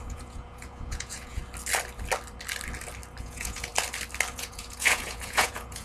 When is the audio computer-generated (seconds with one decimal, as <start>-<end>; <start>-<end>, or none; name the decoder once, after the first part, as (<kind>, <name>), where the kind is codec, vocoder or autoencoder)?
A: 0.0-1.4 (vocoder, Vocos); 3.2-3.7; 4.3-5.8